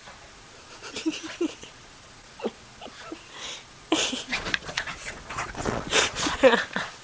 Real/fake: fake